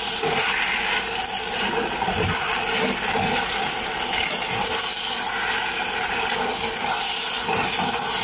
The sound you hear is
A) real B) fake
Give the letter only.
A